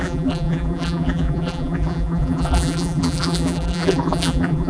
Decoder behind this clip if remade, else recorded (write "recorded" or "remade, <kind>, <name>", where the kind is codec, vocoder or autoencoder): remade, vocoder, BigVGAN v2